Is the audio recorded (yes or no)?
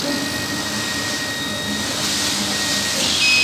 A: yes